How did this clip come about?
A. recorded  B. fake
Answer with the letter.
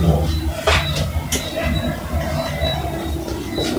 A